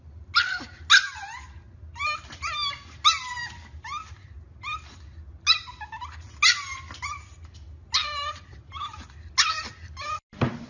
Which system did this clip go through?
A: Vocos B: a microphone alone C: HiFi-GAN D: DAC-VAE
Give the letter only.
B